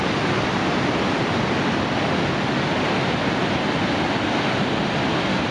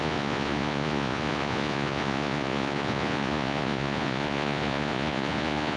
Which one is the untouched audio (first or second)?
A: first